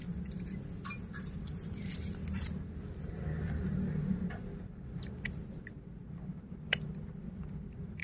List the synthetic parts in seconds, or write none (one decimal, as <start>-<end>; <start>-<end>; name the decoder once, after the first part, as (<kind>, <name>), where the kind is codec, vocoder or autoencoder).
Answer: 0.0-8.0 (vocoder, BigVGAN v2)